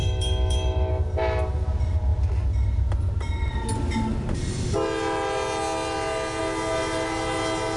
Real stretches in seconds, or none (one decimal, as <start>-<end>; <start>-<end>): 0.9-7.8